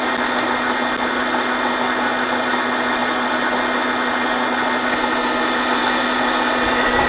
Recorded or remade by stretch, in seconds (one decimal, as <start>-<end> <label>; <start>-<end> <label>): 0.0-7.1 recorded